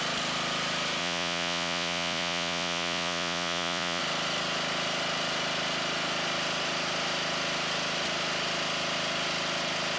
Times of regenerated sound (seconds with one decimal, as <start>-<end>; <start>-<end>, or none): 1.0-4.0